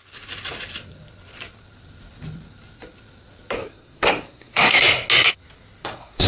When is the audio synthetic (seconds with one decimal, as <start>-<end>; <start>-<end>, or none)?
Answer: 3.6-4.8; 5.8-6.3